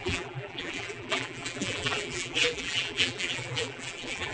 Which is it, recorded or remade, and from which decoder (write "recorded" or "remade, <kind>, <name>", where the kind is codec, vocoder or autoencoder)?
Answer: remade, vocoder, BigVGAN v2